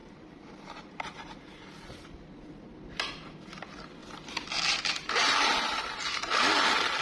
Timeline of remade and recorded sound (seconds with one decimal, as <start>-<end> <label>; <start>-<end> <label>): 0.0-1.2 remade; 1.2-7.0 recorded